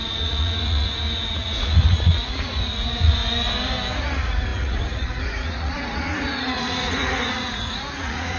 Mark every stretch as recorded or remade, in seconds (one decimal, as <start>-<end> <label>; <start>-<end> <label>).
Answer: 0.0-3.2 remade; 3.2-4.0 recorded; 4.0-8.4 remade